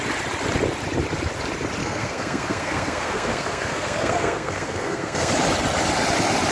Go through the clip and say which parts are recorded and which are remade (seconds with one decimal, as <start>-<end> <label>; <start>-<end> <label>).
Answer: 0.0-1.8 recorded; 1.8-5.3 remade; 5.3-6.5 recorded